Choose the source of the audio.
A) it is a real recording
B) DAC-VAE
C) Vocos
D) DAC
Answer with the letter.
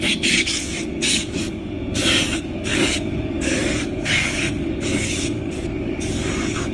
D